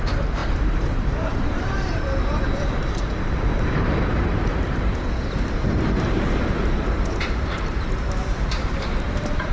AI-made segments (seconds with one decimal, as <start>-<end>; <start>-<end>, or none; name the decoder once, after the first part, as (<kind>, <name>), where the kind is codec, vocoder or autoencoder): 0.0-4.5 (vocoder, BigVGAN v2); 5.7-9.5